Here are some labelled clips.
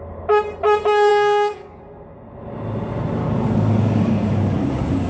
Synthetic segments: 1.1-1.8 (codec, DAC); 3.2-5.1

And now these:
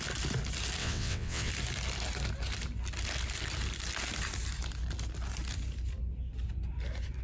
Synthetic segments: 0.8-1.5 (vocoder, WaveNeXt)